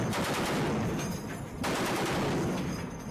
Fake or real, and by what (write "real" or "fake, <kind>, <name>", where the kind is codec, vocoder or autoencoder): real